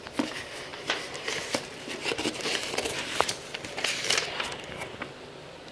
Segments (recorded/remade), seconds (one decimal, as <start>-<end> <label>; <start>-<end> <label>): 0.0-0.7 recorded; 0.7-4.1 remade; 4.1-5.7 recorded